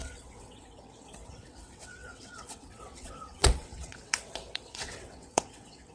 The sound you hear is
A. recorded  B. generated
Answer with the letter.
B